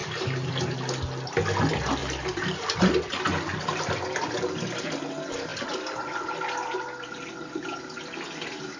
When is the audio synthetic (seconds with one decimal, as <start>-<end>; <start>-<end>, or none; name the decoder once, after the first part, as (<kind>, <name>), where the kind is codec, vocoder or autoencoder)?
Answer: 0.0-0.5 (vocoder, BigVGAN v2); 2.0-2.8; 3.5-4.0